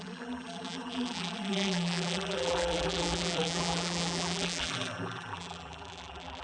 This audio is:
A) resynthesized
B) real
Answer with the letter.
A